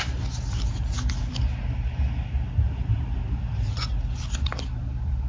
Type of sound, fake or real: real